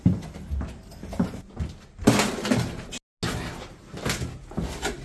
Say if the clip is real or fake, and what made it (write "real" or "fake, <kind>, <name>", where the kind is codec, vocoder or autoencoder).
real